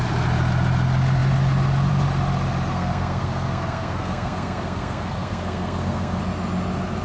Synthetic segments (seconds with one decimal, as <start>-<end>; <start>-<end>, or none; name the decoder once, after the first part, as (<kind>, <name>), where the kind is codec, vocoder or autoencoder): 2.7-6.2 (codec, SNAC)